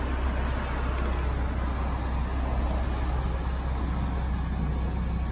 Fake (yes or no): no